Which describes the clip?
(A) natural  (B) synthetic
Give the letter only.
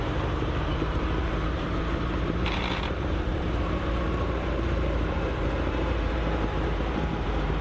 B